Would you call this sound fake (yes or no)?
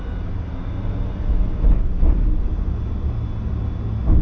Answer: no